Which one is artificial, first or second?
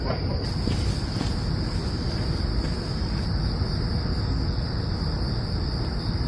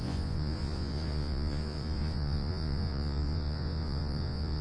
second